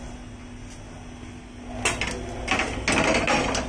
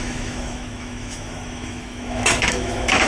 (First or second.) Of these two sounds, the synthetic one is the second